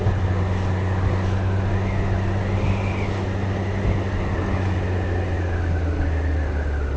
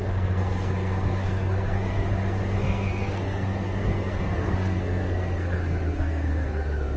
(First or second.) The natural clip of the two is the first